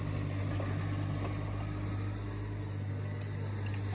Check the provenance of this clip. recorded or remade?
recorded